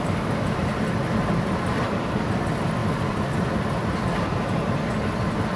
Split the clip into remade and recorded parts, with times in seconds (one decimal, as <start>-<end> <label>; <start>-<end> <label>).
0.0-5.6 recorded